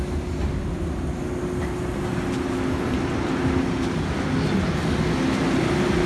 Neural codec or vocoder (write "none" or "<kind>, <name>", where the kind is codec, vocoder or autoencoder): none